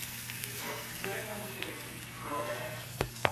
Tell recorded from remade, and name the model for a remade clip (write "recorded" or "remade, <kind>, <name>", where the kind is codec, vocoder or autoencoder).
remade, codec, SNAC